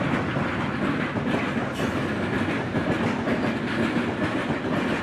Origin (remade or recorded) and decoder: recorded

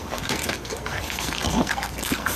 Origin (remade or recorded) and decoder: remade, codec, SNAC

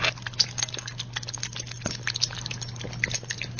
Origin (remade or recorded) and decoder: recorded